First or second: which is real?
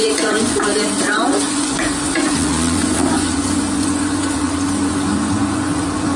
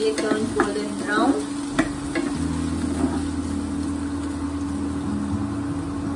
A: second